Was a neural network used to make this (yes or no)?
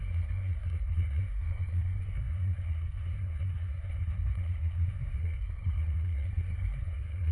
yes